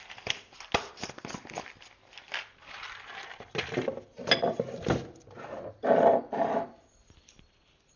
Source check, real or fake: fake